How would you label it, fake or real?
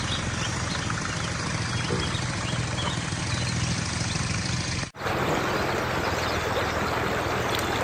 real